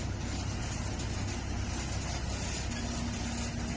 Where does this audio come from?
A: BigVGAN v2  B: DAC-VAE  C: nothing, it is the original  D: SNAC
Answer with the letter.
C